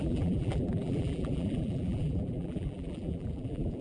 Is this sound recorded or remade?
remade